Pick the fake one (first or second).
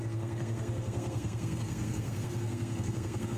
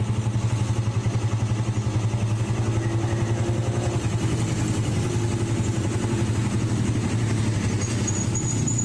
first